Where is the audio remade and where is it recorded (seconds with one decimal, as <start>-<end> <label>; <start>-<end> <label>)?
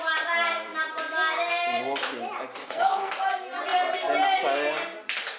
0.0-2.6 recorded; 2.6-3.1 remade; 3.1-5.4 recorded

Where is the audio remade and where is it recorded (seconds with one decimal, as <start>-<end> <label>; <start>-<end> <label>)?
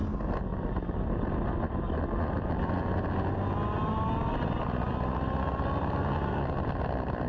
0.0-7.3 recorded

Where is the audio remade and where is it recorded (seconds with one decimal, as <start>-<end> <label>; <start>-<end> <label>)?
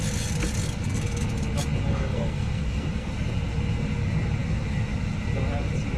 0.0-0.8 recorded; 0.8-1.3 remade; 1.3-1.9 recorded; 1.9-3.1 remade; 3.1-6.0 recorded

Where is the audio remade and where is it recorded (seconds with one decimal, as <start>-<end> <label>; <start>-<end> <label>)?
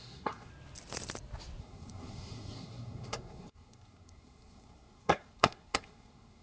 0.0-0.5 remade; 0.5-1.6 recorded; 1.6-6.4 remade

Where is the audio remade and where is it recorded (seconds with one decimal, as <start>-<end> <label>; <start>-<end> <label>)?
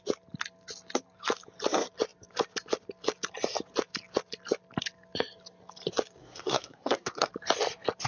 0.0-6.2 recorded; 6.2-7.3 remade; 7.3-8.1 recorded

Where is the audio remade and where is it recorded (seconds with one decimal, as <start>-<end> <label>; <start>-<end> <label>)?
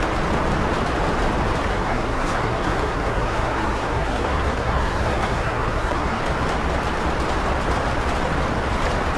0.0-1.7 recorded; 1.7-6.2 remade; 6.2-9.2 recorded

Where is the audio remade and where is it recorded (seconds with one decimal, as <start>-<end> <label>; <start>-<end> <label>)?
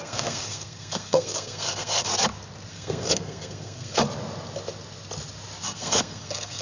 0.0-2.1 remade; 2.1-2.7 recorded; 2.7-4.0 remade; 4.0-5.6 recorded; 5.6-6.6 remade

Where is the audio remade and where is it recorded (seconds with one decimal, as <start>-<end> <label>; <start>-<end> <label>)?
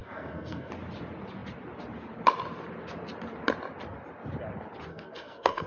0.0-0.7 remade; 0.7-4.9 recorded; 4.9-5.7 remade